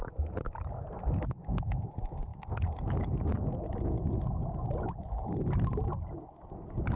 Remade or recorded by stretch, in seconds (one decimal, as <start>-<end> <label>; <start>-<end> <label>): 0.0-7.0 recorded